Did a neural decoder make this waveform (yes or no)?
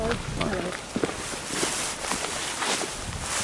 no